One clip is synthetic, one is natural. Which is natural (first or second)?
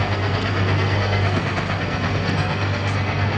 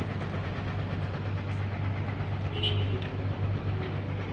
second